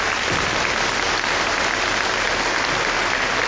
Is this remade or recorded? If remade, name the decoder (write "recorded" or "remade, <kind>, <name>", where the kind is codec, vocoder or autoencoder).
recorded